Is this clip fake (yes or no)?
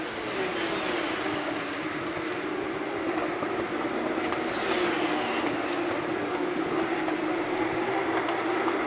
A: no